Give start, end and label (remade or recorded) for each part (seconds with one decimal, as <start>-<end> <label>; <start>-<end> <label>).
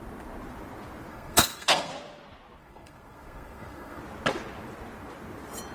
0.0-1.1 recorded; 1.1-1.9 remade; 1.9-2.6 recorded; 2.6-4.0 remade; 4.0-5.7 recorded